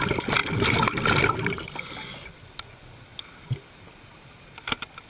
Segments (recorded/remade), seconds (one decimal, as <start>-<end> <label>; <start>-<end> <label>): 0.0-5.1 recorded